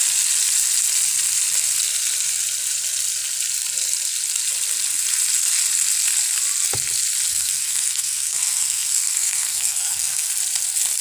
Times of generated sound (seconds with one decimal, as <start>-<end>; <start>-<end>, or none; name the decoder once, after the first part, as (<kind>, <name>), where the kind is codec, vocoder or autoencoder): 7.3-10.3 (codec, SNAC)